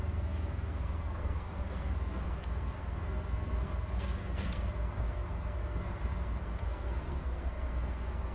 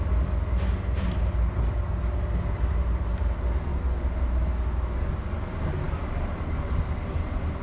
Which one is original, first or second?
second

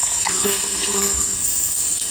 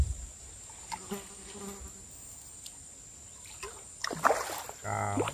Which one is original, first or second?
second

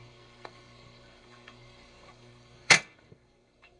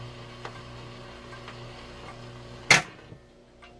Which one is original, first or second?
second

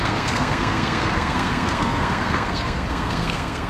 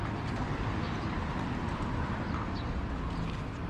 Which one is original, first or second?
second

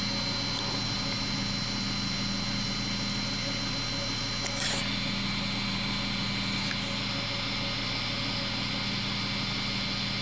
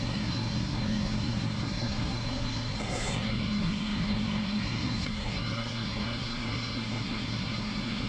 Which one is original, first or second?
first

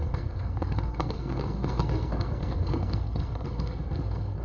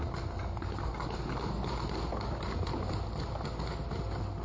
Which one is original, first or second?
second